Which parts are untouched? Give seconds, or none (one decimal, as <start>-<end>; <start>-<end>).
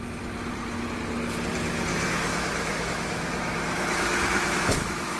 0.0-1.9